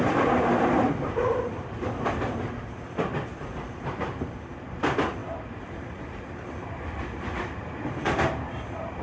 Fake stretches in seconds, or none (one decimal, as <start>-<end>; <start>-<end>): 0.0-9.0